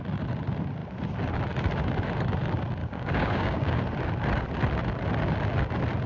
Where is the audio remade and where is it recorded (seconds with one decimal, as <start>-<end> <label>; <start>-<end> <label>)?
0.0-2.8 recorded; 2.8-3.8 remade; 3.8-6.1 recorded